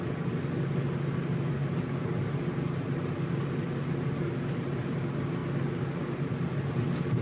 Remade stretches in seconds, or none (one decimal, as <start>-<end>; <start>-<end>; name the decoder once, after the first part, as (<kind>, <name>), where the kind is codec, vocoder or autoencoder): none